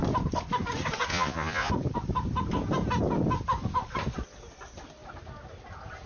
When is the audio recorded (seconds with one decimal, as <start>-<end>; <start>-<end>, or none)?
0.0-1.1; 1.7-6.1